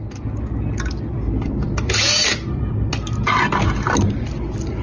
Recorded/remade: recorded